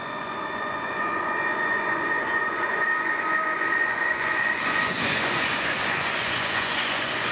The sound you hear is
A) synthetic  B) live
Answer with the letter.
A